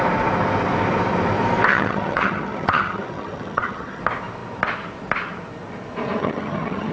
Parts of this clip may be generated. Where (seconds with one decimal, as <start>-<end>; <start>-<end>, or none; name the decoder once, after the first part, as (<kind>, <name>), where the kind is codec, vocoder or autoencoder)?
1.7-4.0 (vocoder, HiFi-GAN); 6.2-6.9